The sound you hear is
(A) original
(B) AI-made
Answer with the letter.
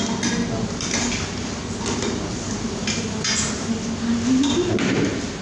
A